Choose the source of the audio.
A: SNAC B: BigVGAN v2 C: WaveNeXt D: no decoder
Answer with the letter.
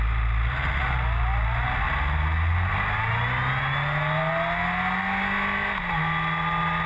D